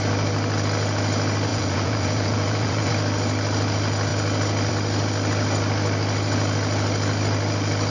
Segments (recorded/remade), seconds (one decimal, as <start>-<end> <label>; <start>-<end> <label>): 0.0-1.5 recorded; 1.5-2.9 remade; 2.9-7.9 recorded